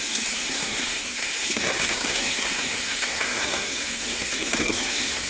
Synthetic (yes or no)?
yes